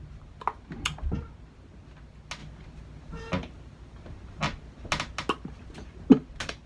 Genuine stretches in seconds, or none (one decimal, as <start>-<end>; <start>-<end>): 0.0-6.7